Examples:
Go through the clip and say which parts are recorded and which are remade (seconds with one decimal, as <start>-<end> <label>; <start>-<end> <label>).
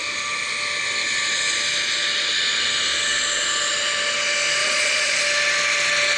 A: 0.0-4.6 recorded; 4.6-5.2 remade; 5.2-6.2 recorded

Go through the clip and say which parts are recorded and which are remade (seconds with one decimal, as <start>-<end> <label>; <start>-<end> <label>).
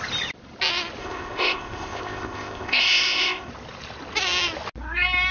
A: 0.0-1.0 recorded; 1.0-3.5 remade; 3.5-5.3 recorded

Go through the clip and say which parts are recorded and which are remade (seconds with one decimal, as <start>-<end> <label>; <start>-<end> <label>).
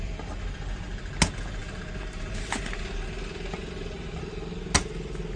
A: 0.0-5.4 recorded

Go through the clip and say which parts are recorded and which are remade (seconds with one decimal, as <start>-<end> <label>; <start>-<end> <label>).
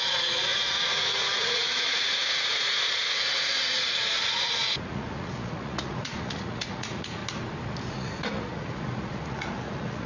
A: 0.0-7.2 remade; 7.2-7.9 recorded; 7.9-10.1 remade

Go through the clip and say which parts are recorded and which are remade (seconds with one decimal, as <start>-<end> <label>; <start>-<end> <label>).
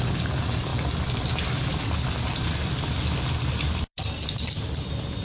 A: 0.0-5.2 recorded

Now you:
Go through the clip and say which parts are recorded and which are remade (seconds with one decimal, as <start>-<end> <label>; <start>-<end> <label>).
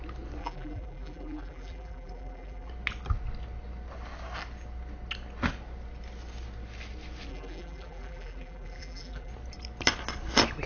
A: 0.0-0.4 recorded; 0.4-2.7 remade; 2.7-7.3 recorded; 7.3-9.3 remade; 9.3-10.7 recorded